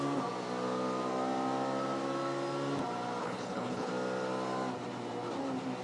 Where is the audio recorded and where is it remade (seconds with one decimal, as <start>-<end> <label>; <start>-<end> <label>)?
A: 0.0-3.2 recorded; 3.2-3.9 remade; 3.9-5.8 recorded